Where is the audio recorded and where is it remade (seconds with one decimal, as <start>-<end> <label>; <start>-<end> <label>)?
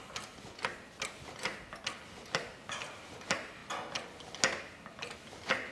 0.0-5.7 recorded